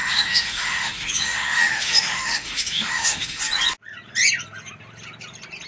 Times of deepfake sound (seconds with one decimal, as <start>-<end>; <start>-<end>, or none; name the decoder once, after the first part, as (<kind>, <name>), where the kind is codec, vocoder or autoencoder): 0.0-3.4 (autoencoder, DAC-VAE)